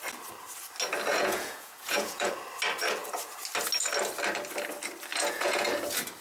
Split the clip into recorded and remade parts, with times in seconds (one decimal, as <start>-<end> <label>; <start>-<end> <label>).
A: 0.0-1.1 recorded; 1.1-2.3 remade; 2.3-5.1 recorded; 5.1-5.7 remade; 5.7-6.2 recorded